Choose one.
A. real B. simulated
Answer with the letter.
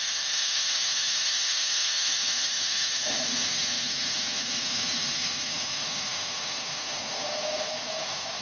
B